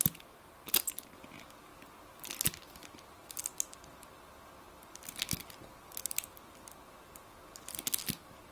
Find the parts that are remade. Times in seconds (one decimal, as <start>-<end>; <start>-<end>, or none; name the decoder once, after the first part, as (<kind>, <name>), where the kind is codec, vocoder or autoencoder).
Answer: none